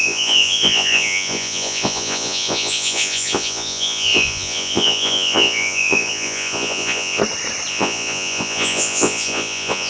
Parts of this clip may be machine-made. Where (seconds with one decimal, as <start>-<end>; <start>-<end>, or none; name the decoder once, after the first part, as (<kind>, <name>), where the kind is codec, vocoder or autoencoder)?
0.0-7.2 (vocoder, Vocos); 7.7-9.9